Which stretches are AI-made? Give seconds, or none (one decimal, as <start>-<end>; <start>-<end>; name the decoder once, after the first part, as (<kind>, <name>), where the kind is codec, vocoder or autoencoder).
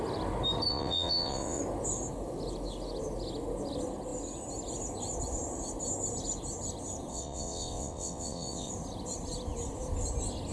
0.7-1.6 (vocoder, WaveNeXt); 7.1-8.7